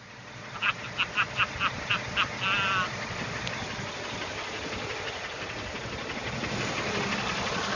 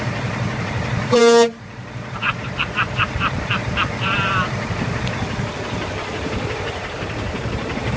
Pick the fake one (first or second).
second